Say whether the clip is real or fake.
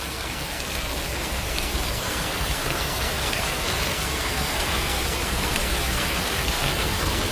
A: fake